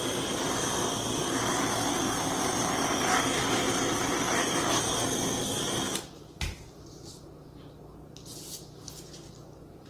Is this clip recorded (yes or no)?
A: yes